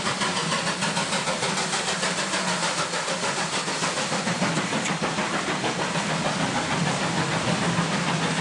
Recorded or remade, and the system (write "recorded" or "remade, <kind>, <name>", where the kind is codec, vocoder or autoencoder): remade, vocoder, BigVGAN v2